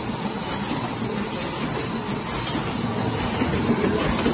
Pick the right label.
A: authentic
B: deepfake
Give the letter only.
A